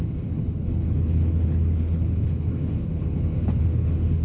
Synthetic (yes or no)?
yes